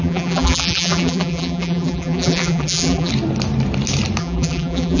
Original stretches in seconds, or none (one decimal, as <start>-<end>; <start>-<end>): 3.1-4.2